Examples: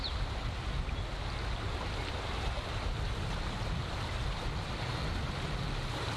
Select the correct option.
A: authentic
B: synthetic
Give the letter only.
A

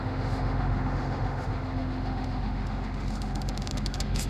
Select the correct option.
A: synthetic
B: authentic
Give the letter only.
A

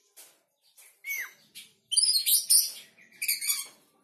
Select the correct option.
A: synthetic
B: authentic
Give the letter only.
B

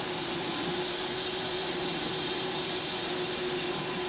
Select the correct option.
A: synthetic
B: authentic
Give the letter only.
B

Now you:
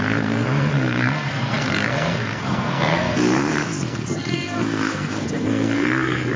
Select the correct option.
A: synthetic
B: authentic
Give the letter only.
A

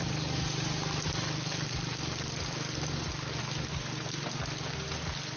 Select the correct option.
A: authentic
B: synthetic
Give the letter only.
A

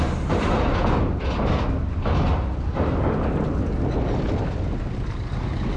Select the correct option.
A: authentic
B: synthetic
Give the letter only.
A